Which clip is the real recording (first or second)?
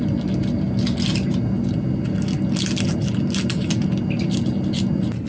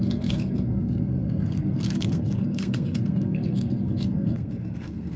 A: first